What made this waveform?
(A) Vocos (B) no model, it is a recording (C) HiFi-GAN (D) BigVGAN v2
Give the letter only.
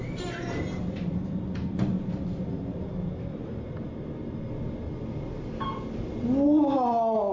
B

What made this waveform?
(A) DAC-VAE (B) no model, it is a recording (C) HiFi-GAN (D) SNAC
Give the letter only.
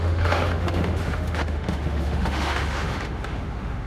A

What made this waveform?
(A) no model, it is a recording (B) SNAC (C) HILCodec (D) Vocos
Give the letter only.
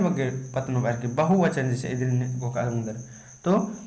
A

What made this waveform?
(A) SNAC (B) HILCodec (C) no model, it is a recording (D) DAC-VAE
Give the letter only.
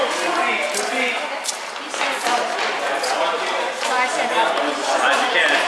C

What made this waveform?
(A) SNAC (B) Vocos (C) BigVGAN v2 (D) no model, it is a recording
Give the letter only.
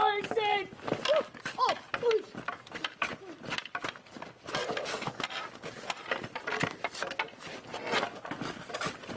D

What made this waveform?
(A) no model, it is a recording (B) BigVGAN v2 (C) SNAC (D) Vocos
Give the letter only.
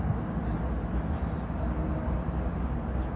A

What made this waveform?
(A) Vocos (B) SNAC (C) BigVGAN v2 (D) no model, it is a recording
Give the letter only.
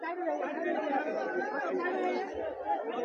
D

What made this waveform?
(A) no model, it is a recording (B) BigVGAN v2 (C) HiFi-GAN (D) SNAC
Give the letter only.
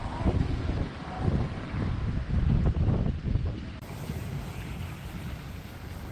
B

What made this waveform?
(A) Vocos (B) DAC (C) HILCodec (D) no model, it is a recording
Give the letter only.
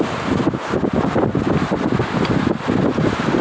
D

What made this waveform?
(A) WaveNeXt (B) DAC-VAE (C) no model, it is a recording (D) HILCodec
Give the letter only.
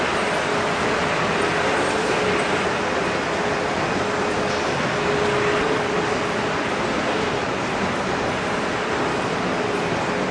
C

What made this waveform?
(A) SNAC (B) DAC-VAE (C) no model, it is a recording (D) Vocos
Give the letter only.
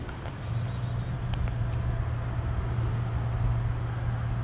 C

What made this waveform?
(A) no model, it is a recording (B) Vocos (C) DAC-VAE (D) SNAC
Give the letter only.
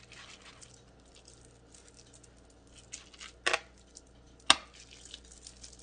A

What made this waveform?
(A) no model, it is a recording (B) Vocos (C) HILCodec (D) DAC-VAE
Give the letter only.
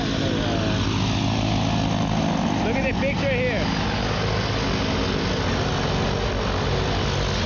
A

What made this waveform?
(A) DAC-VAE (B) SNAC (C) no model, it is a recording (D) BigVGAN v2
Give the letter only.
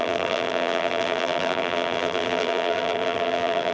D